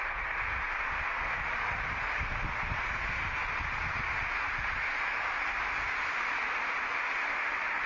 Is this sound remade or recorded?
recorded